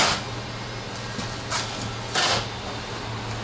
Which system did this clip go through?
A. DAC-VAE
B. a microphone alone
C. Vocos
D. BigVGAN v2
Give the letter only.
B